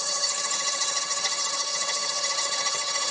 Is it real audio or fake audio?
fake